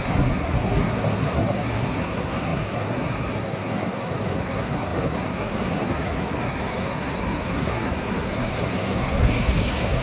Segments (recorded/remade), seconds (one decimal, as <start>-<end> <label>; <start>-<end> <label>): 0.0-10.0 remade